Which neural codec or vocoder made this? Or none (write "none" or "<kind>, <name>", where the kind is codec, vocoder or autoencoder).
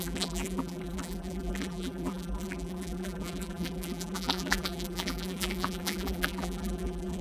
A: vocoder, BigVGAN v2